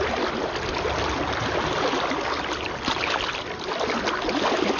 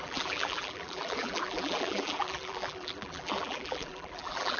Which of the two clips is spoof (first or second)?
second